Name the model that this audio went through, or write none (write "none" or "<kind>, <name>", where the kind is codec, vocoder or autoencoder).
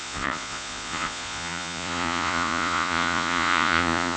vocoder, Vocos